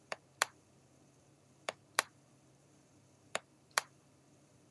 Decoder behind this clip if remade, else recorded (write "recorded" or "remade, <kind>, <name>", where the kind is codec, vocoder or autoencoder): remade, vocoder, BigVGAN v2